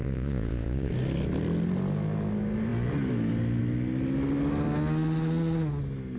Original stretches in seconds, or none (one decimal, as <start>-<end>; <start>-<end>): 0.9-6.2